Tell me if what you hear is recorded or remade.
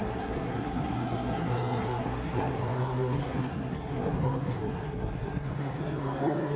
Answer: remade